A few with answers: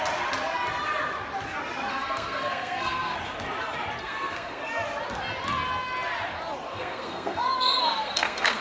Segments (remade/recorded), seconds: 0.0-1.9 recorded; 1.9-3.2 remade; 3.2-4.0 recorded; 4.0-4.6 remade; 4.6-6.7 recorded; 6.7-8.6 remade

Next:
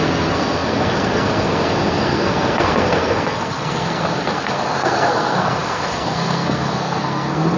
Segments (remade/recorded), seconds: 0.0-7.6 remade

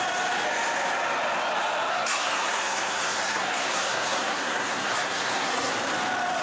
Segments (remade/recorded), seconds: 0.0-1.9 recorded; 1.9-5.7 remade; 5.7-6.4 recorded